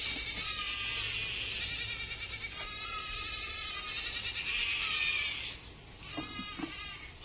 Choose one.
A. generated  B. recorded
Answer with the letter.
B